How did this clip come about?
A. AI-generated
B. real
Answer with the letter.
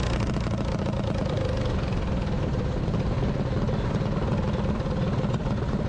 B